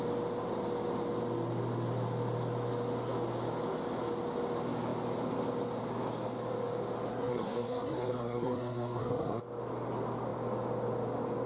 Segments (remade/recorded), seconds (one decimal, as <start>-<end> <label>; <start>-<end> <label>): 0.0-7.1 recorded; 7.1-9.4 remade; 9.4-11.5 recorded